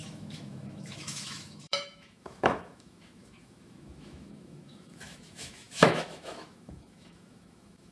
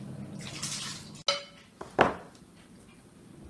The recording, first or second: second